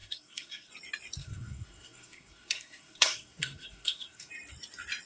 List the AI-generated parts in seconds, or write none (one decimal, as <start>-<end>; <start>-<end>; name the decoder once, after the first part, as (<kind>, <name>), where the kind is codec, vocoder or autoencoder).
0.0-0.7 (codec, SNAC); 1.2-4.3